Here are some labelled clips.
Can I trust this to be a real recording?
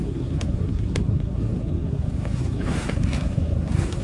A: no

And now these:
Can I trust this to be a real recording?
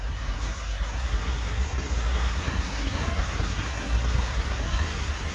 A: no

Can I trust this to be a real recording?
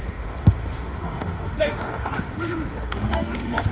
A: no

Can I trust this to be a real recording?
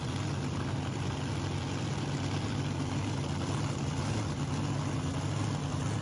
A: yes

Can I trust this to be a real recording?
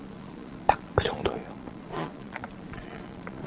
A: no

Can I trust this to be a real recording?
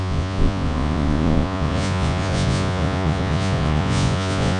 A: no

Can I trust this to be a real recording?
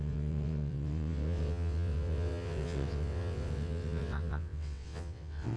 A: no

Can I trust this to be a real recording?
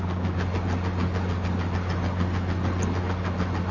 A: yes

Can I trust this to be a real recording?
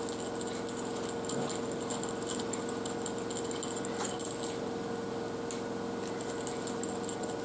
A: yes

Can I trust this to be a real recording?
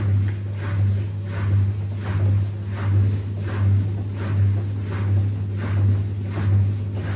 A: yes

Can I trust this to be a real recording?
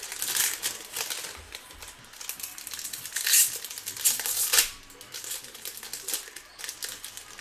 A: yes